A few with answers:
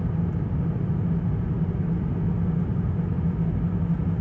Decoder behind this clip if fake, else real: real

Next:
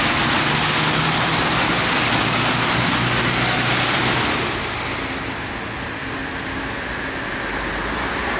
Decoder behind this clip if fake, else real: real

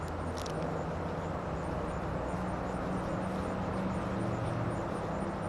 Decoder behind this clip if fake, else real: real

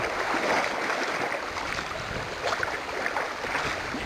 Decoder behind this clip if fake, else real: real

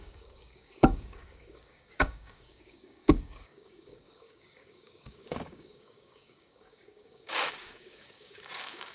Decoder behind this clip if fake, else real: fake, codec, DAC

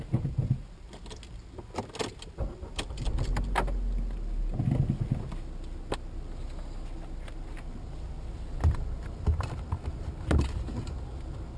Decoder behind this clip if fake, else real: real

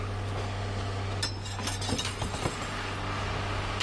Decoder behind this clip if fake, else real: real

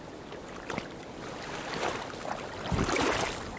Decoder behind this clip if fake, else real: real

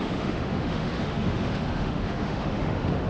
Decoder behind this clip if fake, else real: fake, autoencoder, DAC-VAE